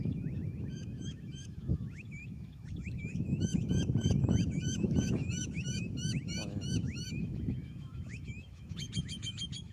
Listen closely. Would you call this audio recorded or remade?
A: remade